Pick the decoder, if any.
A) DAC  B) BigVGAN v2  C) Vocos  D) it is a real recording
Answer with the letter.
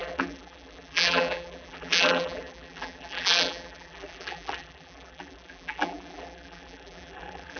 B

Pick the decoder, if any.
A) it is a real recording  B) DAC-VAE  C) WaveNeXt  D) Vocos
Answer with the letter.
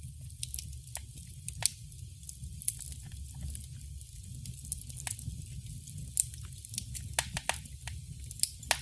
A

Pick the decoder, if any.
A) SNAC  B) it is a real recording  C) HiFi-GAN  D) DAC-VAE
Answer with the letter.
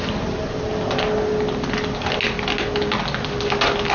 B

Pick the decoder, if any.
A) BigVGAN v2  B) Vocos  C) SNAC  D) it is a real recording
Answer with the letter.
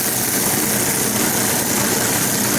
D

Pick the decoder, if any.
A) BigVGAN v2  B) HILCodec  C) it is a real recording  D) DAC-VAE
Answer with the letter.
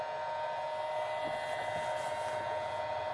C